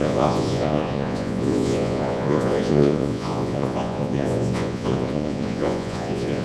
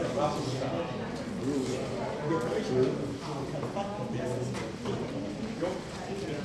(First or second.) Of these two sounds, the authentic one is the second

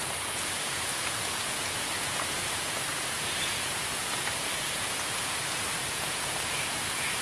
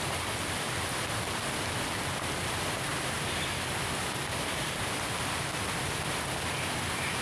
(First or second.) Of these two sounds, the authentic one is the second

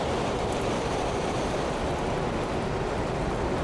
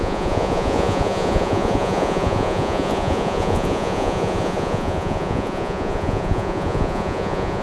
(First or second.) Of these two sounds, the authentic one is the first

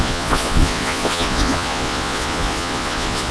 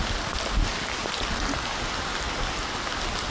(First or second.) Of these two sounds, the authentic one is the second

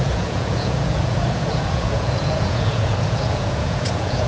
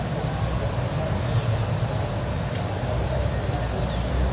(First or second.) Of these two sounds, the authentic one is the second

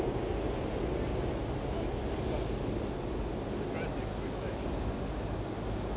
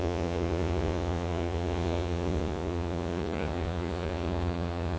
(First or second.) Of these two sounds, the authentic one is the first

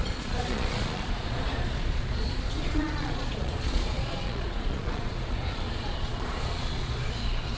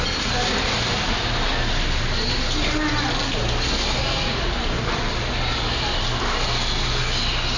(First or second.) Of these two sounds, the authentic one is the second